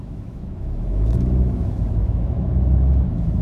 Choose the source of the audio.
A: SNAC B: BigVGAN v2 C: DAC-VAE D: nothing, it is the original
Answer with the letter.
C